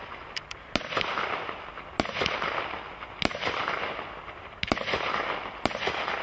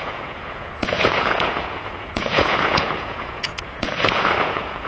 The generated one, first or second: second